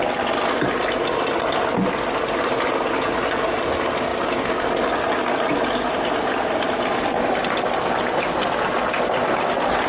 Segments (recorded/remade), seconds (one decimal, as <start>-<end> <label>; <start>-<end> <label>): 0.0-9.9 recorded